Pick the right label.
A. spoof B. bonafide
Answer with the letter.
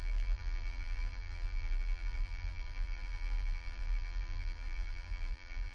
A